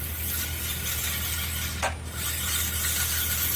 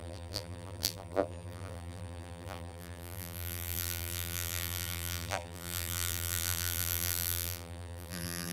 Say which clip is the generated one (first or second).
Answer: second